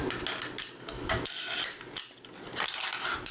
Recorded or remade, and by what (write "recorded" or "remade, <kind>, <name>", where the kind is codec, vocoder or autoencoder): recorded